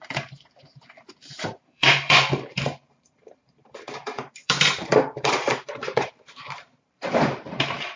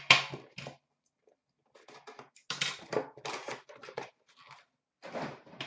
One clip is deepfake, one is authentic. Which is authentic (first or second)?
second